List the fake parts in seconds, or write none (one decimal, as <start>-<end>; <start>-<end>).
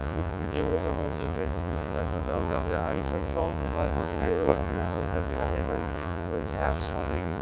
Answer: 0.0-7.4